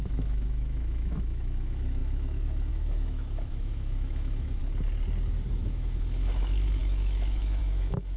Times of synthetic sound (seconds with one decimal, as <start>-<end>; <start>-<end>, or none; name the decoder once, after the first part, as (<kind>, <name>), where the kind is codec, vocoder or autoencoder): 0.0-4.6 (autoencoder, DAC-VAE); 5.5-8.2